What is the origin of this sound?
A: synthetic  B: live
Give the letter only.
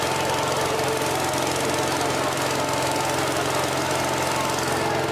B